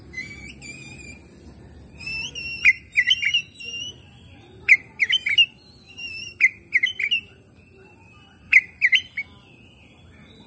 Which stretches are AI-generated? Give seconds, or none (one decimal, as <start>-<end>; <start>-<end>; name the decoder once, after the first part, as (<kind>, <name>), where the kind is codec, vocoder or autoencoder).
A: 1.2-2.3 (vocoder, BigVGAN v2); 2.9-4.2; 4.7-6.4